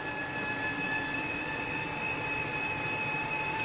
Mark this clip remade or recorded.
recorded